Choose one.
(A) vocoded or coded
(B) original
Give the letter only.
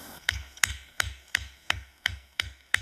A